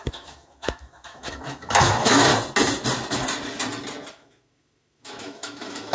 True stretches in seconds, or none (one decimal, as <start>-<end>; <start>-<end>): 2.3-4.1